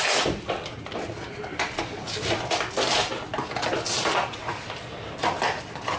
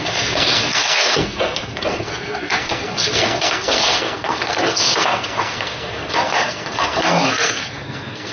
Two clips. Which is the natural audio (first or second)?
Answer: first